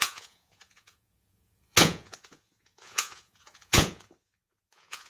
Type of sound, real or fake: fake